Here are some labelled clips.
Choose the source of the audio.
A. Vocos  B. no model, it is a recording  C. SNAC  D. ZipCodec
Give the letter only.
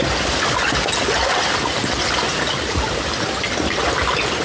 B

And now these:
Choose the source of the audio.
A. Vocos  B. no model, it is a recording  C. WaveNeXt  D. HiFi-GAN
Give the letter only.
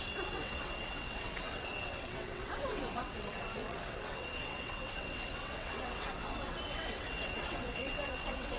C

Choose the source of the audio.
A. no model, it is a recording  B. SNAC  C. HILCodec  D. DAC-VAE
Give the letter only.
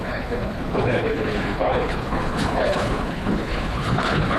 C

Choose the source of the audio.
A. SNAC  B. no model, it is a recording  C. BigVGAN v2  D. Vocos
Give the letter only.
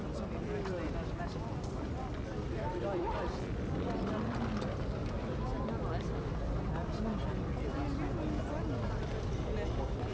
B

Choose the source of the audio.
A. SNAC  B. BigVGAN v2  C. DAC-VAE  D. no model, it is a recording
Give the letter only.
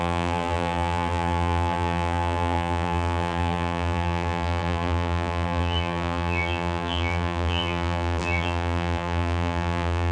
B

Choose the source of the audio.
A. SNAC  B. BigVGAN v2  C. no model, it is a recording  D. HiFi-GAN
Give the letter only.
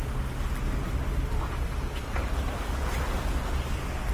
C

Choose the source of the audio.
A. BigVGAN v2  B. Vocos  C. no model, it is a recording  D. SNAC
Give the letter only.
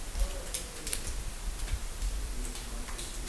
A